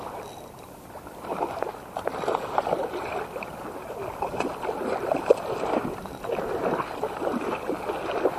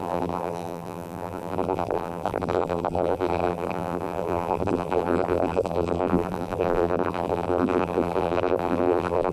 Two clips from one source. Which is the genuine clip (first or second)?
first